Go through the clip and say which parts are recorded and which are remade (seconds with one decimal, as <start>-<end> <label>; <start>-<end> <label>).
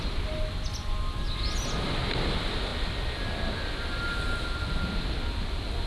0.0-5.9 recorded